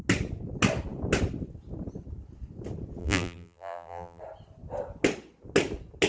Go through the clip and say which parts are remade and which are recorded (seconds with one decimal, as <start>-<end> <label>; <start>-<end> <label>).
0.0-3.0 recorded; 3.0-4.2 remade; 4.2-6.1 recorded